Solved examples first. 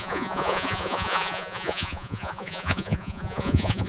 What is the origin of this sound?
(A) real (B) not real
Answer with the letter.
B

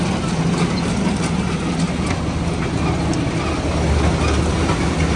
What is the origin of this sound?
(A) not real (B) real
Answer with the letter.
B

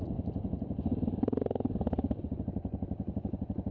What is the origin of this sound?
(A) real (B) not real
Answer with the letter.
A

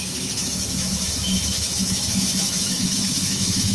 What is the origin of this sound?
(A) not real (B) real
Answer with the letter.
A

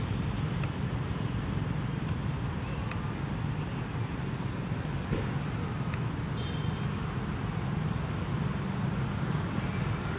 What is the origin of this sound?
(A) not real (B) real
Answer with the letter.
B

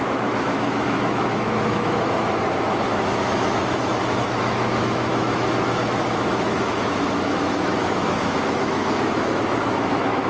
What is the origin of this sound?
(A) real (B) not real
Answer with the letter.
B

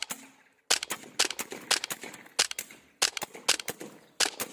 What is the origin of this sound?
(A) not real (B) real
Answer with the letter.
B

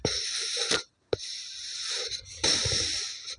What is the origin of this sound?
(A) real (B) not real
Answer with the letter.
A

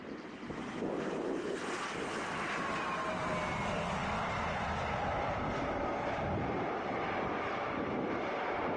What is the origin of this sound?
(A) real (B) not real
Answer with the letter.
A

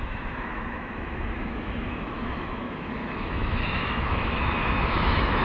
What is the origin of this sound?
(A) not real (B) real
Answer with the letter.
A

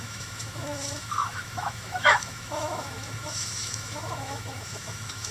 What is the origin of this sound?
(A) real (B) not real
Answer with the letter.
B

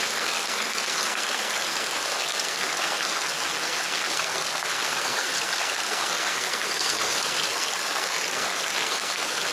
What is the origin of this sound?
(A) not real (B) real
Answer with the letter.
A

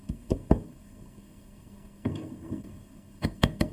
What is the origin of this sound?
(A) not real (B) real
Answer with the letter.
A